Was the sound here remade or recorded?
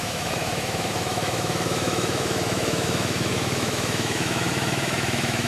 remade